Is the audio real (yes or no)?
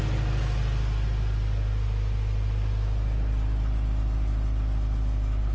yes